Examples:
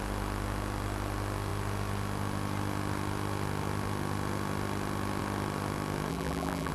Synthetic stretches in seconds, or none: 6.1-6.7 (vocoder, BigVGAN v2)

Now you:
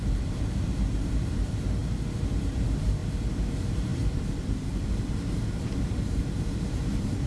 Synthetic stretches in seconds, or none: 0.0-1.8 (vocoder, BigVGAN v2); 2.4-3.0; 3.5-7.3

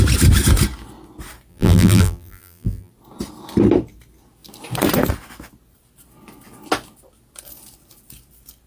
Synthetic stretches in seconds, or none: 1.5-2.9 (vocoder, BigVGAN v2)

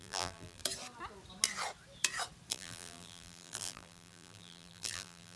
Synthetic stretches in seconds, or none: 0.0-0.6 (vocoder, BigVGAN v2); 2.5-5.4

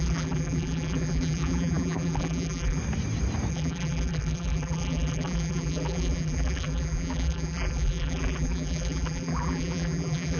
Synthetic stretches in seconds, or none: 0.0-2.8 (vocoder, BigVGAN v2); 3.5-10.4

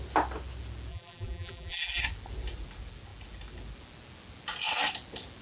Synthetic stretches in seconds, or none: 0.9-2.0 (vocoder, BigVGAN v2)

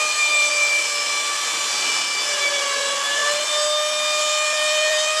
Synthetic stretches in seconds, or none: 0.0-1.9 (vocoder, BigVGAN v2); 2.5-3.2; 4.2-5.2

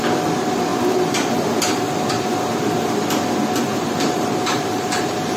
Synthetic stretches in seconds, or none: 0.0-0.7 (vocoder, BigVGAN v2); 3.6-5.4